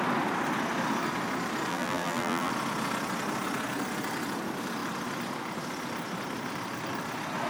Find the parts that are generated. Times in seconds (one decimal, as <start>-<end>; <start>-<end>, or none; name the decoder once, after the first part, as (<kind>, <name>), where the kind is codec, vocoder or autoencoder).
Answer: 1.7-2.5 (vocoder, BigVGAN v2)